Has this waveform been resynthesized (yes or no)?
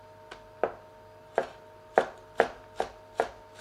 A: no